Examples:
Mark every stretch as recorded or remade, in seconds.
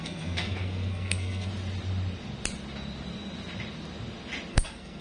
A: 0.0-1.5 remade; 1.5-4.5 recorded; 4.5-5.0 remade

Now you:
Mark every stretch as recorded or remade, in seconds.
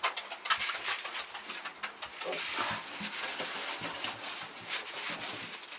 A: 0.0-5.8 recorded